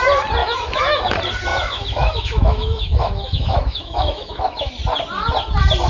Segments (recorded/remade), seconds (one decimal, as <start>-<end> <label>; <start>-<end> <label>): 0.0-0.4 recorded; 0.4-1.1 remade; 1.1-1.5 recorded; 1.5-4.7 remade; 4.7-5.9 recorded